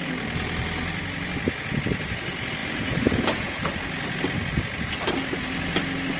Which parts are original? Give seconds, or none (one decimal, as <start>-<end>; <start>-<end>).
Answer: 0.0-2.6; 3.7-6.2